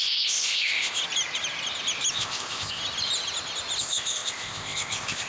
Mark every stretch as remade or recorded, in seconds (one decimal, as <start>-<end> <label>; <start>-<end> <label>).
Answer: 0.0-1.0 remade; 1.0-2.1 recorded; 2.1-2.8 remade; 2.8-3.8 recorded; 3.8-5.3 remade